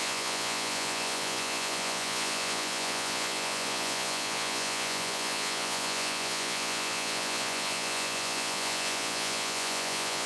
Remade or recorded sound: remade